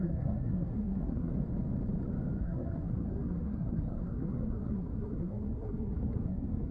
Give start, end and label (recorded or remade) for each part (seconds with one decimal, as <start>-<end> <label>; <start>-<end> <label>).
0.0-1.3 remade; 1.3-2.4 recorded; 2.4-6.7 remade